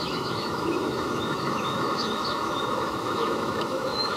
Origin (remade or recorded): remade